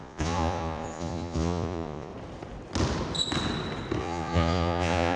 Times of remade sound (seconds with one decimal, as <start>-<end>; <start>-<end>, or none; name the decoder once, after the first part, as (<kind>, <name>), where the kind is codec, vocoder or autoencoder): 0.0-2.1 (vocoder, Vocos); 4.0-5.2